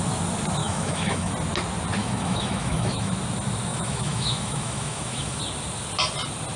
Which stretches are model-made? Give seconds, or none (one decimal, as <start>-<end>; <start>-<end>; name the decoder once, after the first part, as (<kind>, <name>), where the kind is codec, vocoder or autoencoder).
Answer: 0.6-1.3 (autoencoder, DAC-VAE); 2.0-3.1; 3.7-5.4